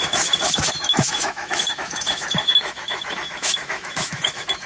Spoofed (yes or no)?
yes